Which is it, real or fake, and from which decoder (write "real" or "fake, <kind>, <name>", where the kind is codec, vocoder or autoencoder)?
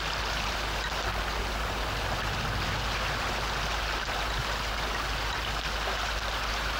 real